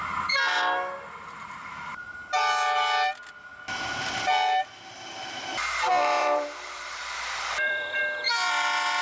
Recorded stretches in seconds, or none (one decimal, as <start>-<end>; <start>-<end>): 0.0-5.9; 8.0-9.0